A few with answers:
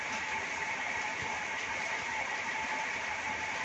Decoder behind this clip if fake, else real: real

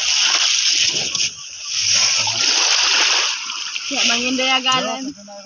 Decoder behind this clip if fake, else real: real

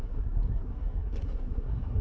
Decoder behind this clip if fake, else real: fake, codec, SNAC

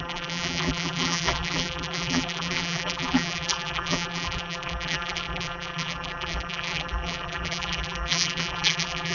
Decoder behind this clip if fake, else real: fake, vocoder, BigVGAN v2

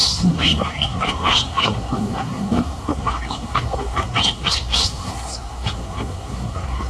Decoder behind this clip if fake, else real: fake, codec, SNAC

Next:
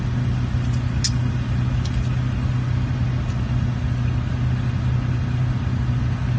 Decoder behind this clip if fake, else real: real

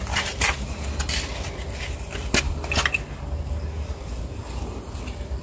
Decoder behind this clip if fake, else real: real